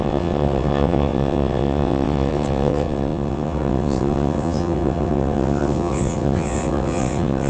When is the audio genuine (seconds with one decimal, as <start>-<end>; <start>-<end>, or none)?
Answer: none